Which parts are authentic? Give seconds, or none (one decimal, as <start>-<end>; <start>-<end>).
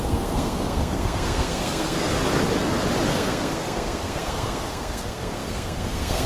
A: 2.2-3.1